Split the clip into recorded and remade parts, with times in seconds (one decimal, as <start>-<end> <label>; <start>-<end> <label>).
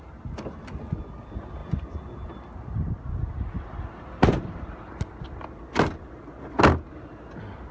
0.0-7.7 recorded